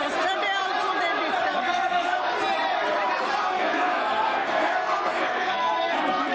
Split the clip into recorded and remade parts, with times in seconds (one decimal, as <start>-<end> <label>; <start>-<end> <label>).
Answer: 0.0-1.6 recorded; 1.6-2.3 remade; 2.3-3.6 recorded; 3.6-6.3 remade